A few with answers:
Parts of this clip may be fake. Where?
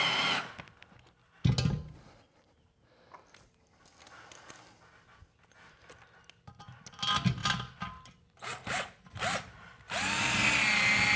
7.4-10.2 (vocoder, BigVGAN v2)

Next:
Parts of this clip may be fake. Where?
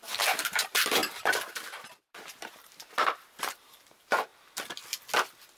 0.0-4.3 (vocoder, BigVGAN v2)